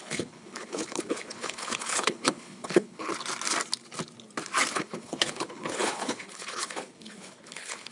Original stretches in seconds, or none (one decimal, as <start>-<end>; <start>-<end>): 3.1-4.7